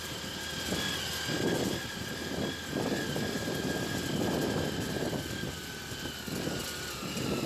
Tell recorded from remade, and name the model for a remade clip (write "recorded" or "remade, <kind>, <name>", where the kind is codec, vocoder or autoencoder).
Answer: recorded